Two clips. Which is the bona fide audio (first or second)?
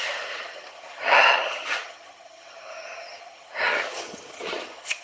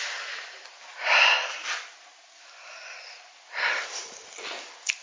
second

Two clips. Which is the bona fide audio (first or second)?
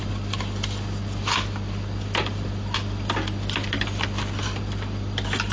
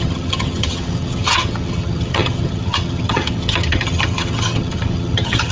first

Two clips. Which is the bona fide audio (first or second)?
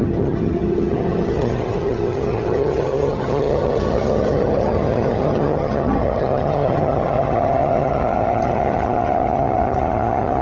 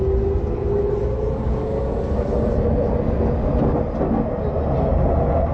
second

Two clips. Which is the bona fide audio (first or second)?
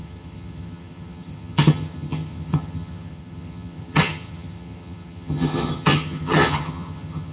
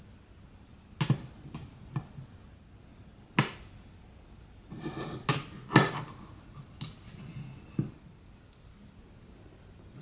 second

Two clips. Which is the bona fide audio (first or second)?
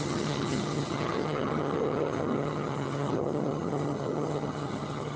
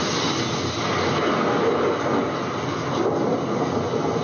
second